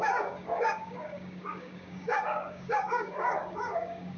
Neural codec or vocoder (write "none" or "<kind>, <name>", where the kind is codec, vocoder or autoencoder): codec, DAC